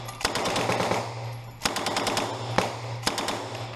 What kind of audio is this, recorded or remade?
recorded